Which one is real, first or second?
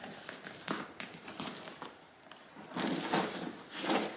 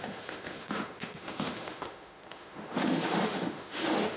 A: first